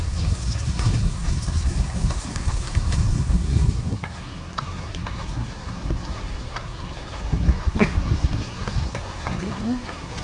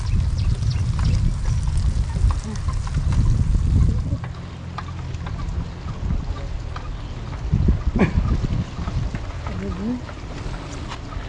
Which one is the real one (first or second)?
second